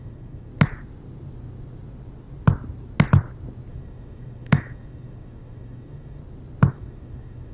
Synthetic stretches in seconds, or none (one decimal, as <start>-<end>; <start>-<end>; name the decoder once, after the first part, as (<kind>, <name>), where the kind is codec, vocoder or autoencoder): 0.0-0.5 (autoencoder, DAC-VAE); 3.7-6.2; 6.7-7.5